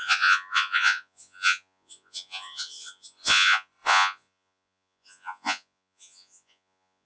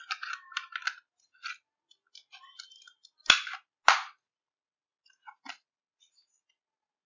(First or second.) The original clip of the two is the second